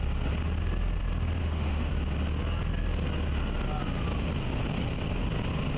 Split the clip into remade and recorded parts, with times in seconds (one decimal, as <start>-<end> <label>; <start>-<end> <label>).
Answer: 0.0-1.4 recorded; 1.4-1.9 remade; 1.9-5.8 recorded

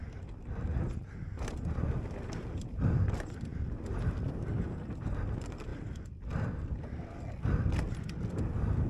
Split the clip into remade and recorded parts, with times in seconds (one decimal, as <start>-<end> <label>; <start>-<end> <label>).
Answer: 0.0-8.9 recorded

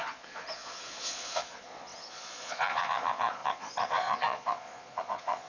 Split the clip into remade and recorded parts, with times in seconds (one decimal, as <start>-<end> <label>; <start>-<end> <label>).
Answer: 0.0-5.5 remade

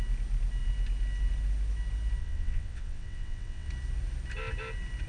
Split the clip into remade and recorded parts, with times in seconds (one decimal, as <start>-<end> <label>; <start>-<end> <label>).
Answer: 0.0-2.2 recorded; 2.2-3.7 remade; 3.7-5.1 recorded

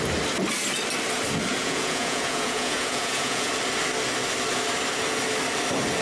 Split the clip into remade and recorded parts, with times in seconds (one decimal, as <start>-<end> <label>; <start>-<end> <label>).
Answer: 0.0-1.5 recorded; 1.5-3.5 remade; 3.5-6.0 recorded